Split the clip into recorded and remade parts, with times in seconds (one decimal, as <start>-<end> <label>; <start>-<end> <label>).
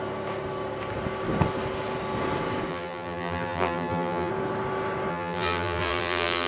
0.0-2.7 recorded; 2.7-4.3 remade; 4.3-5.1 recorded; 5.1-6.5 remade